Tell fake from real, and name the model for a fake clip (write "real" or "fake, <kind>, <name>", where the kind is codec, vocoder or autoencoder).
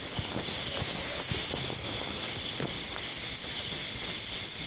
real